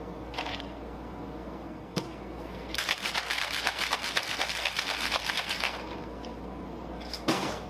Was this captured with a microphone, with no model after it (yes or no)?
no